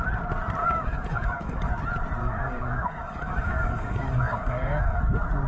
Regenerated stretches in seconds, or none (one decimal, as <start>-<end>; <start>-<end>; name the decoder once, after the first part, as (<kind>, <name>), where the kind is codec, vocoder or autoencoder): 0.6-1.7 (codec, DAC); 2.2-5.0